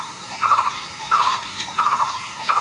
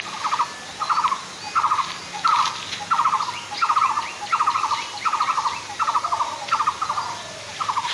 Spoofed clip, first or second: first